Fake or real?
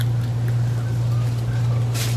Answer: real